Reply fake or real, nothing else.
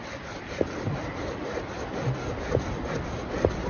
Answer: real